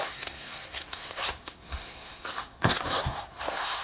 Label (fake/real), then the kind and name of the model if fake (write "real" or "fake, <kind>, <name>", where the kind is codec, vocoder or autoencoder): fake, codec, SNAC